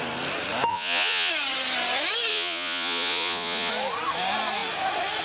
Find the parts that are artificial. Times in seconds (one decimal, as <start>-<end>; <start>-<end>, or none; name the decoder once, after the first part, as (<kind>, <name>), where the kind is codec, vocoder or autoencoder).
0.7-1.3 (vocoder, Vocos); 2.3-3.7